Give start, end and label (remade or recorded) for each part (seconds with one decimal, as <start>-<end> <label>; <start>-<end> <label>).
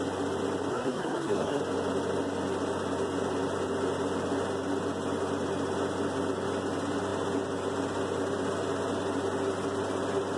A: 0.0-0.7 recorded; 0.7-1.6 remade; 1.6-10.4 recorded